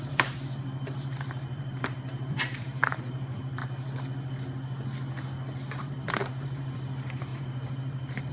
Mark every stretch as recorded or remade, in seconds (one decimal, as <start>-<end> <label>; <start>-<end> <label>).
0.0-3.6 remade; 3.6-5.7 recorded; 5.7-8.3 remade